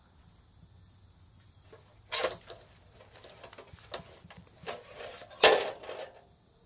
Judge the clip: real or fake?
real